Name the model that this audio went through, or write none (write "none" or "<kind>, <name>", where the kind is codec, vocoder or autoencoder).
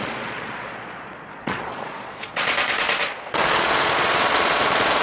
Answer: vocoder, Vocos